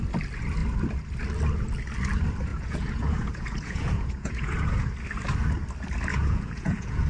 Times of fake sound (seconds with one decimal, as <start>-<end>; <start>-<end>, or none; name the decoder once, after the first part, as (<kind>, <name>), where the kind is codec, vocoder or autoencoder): 2.5-4.9 (vocoder, Vocos); 6.1-7.1